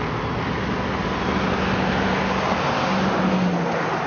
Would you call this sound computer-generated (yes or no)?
no